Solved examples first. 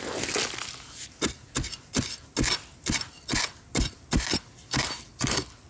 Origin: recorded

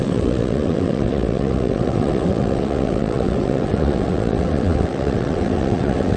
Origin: remade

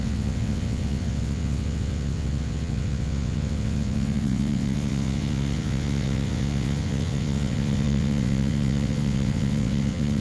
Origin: remade